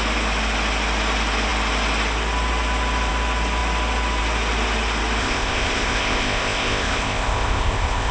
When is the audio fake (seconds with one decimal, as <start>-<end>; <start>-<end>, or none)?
5.2-8.1